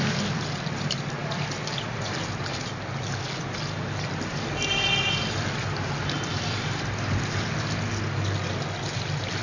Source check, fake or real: real